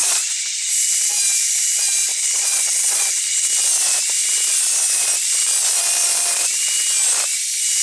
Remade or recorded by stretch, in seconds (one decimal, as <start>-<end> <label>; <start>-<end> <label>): 0.0-0.7 remade; 0.7-2.1 recorded; 2.1-3.5 remade; 3.5-7.8 recorded